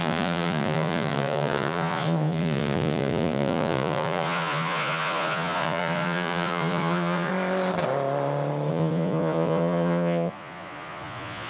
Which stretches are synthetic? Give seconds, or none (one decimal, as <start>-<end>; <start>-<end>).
0.0-7.3; 8.7-11.5